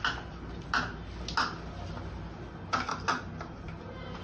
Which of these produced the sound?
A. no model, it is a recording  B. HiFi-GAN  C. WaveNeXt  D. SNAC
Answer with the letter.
A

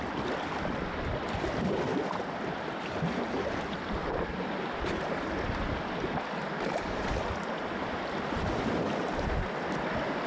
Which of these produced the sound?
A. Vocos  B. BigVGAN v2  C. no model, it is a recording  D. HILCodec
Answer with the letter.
B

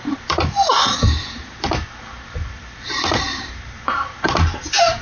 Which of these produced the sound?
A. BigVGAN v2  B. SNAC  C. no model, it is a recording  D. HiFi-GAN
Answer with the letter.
A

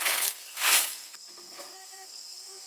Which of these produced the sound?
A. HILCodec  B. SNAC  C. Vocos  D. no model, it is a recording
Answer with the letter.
B